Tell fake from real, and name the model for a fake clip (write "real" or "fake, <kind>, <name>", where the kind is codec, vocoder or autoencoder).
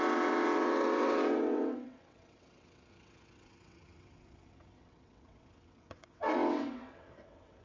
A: fake, vocoder, WaveNeXt